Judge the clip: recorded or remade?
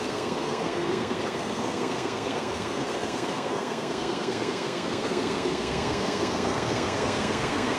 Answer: remade